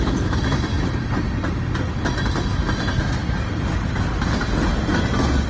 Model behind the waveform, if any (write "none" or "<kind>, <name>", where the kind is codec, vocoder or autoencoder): none